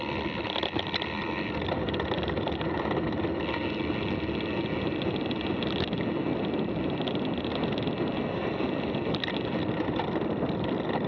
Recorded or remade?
recorded